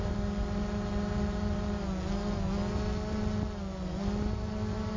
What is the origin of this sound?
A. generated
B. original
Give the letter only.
B